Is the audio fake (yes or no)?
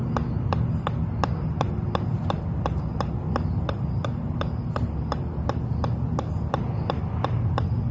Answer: no